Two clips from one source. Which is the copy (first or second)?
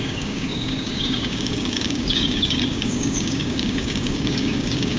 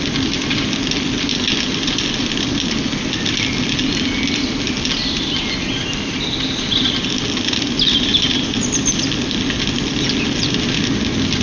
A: first